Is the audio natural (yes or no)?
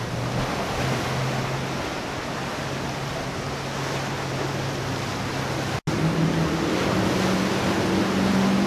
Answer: yes